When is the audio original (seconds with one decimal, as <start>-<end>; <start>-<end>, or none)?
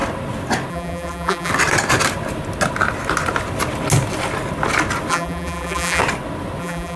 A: 0.0-0.7; 1.5-5.1; 6.0-6.6